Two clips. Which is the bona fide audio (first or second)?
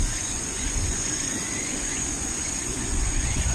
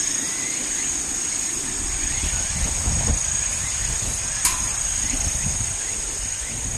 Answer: second